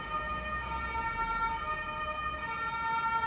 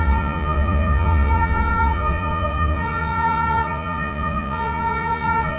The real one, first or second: first